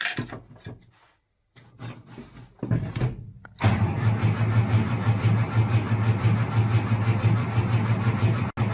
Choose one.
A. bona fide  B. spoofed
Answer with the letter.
A